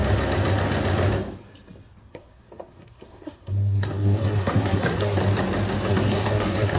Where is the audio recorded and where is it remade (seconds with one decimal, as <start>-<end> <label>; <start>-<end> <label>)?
0.0-2.1 recorded; 2.1-5.2 remade; 5.2-5.9 recorded; 5.9-6.8 remade